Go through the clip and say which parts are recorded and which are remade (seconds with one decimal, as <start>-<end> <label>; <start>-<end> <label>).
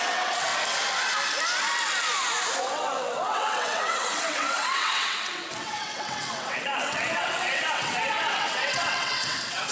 0.0-0.5 remade; 0.5-2.6 recorded; 2.6-9.7 remade